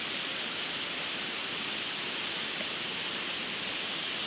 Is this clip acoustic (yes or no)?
yes